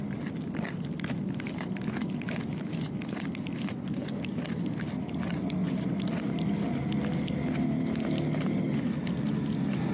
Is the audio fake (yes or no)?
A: no